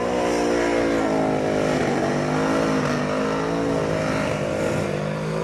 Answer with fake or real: real